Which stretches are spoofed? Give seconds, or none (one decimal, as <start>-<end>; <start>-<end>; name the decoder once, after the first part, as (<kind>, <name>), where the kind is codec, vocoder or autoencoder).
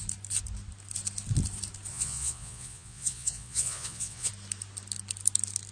1.9-4.3 (vocoder, Vocos)